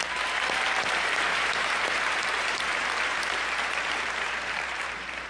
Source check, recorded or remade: remade